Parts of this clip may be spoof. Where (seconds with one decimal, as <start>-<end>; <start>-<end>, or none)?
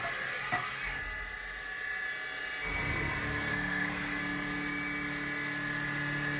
3.5-4.2